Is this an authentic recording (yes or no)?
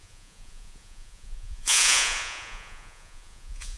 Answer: no